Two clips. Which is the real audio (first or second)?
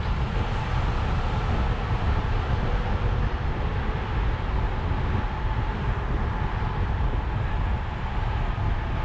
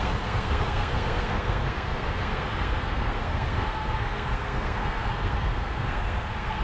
first